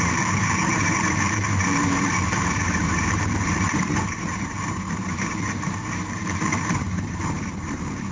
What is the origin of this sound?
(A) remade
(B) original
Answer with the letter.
A